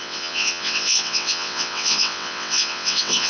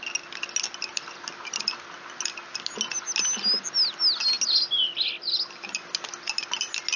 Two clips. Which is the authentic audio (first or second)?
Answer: second